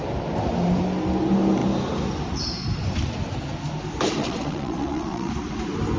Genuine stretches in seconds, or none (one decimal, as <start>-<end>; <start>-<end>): 0.0-4.2; 5.3-6.0